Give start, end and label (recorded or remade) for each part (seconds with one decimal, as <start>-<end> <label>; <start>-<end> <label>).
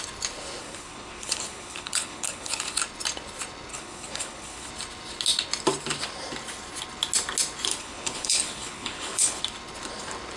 0.0-0.6 recorded; 0.6-2.8 remade; 2.8-3.7 recorded; 3.7-4.7 remade; 4.7-7.7 recorded; 7.7-9.4 remade; 9.4-10.4 recorded